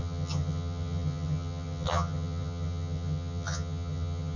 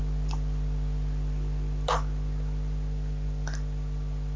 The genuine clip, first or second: second